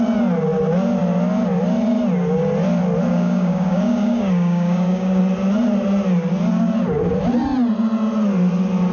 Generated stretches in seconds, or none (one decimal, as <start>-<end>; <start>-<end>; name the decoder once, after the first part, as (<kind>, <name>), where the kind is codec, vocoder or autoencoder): 3.1-5.2 (codec, DAC)